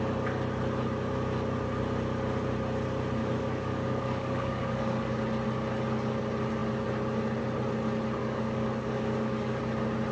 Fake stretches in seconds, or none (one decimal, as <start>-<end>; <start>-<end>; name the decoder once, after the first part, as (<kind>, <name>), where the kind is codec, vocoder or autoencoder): 3.2-5.2 (codec, DAC); 8.2-9.6